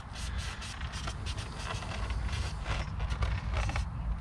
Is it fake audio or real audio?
real